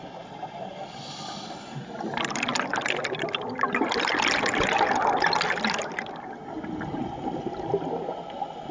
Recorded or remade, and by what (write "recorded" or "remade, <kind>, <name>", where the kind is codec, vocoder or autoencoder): recorded